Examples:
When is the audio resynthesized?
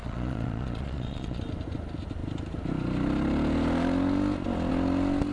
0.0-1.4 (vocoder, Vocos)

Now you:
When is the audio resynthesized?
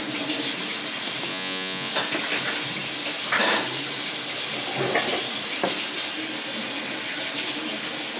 1.3-1.9 (vocoder, Vocos)